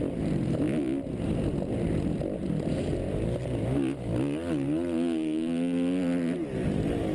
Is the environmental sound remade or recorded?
recorded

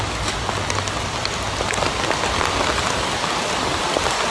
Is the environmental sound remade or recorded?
recorded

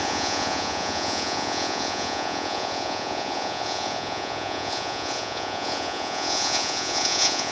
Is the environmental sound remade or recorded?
remade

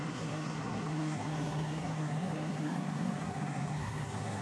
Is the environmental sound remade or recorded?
remade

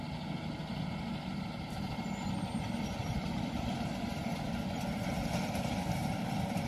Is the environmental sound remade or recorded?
recorded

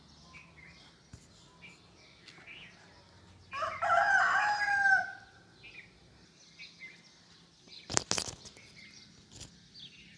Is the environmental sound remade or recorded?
recorded